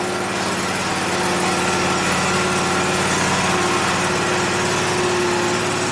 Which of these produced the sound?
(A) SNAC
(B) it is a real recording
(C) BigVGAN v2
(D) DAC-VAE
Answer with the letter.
B